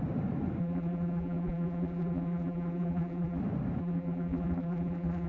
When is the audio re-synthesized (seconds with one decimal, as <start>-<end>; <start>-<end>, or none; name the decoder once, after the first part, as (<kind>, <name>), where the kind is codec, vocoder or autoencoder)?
0.6-3.4 (vocoder, BigVGAN v2); 3.8-5.3